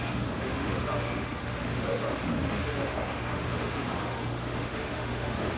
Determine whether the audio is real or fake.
fake